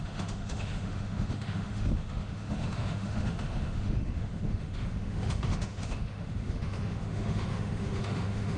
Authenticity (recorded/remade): remade